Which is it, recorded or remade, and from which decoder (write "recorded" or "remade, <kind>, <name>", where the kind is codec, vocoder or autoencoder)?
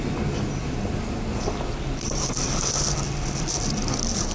recorded